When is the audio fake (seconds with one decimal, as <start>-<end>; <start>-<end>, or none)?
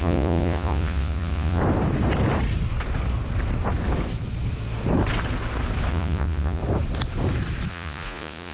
0.0-1.6; 5.9-6.6; 7.7-8.5